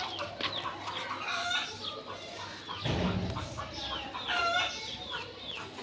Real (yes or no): yes